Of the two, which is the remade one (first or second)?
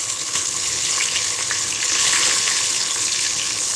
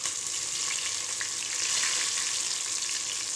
first